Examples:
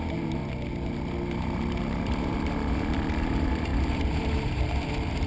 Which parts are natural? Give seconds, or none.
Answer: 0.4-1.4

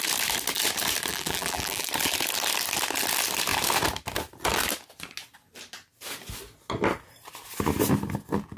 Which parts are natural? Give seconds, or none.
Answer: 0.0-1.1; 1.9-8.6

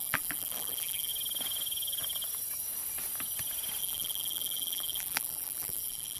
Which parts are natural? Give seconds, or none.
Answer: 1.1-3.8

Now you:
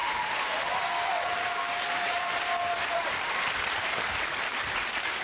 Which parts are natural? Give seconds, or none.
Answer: 3.1-4.5